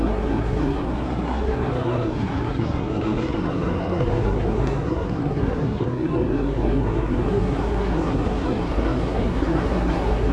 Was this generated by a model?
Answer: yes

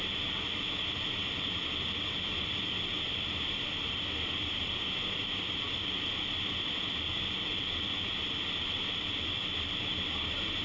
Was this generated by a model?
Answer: no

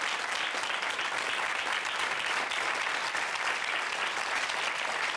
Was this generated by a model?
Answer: no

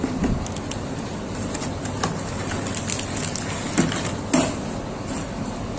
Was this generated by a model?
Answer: no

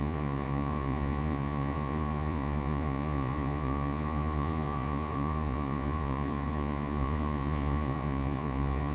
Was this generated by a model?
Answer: yes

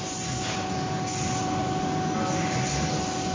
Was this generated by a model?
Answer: no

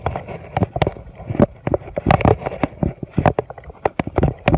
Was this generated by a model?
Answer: no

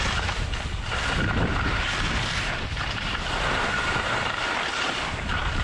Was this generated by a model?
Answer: no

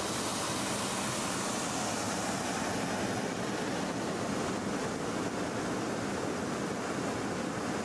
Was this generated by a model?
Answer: no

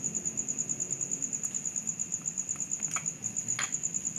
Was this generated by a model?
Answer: no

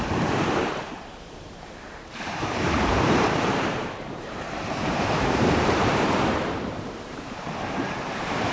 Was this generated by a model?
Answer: yes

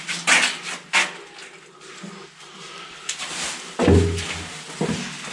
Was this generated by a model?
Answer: no